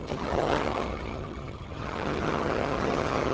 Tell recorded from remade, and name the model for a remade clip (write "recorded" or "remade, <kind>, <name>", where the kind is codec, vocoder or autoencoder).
remade, vocoder, HiFi-GAN